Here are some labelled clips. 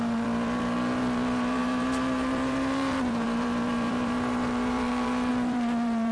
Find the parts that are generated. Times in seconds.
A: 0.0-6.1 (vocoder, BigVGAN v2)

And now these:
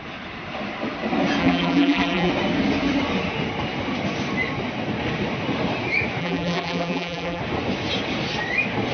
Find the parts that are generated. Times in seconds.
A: 1.4-2.3 (vocoder, BigVGAN v2); 6.2-7.4

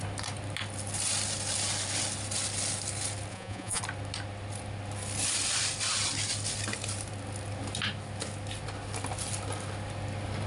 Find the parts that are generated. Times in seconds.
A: 3.3-3.8 (vocoder, Vocos)

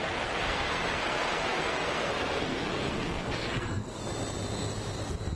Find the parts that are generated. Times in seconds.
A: 0.0-4.0 (codec, SNAC)

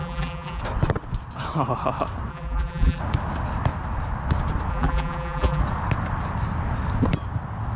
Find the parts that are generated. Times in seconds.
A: 0.0-0.6 (vocoder, BigVGAN v2); 2.3-3.0; 4.7-5.6

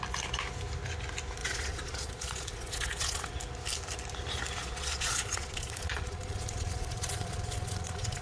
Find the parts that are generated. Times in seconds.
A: 1.4-3.3 (vocoder, Vocos); 4.6-8.2

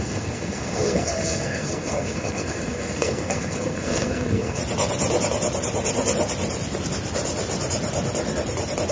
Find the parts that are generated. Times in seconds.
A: 0.0-4.6 (codec, SNAC)